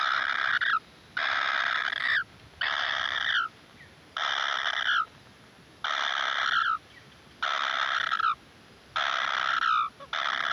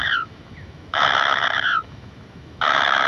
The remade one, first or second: second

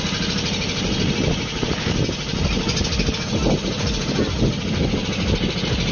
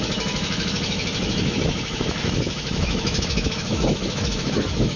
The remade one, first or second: second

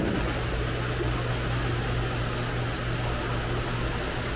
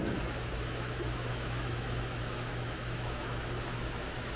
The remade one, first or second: second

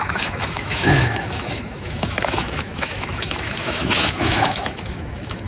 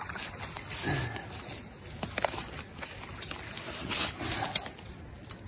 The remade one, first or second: first